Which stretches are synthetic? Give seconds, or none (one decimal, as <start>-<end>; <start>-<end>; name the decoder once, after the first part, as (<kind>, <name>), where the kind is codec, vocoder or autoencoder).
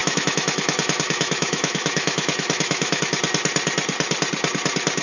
0.0-3.0 (autoencoder, DAC-VAE)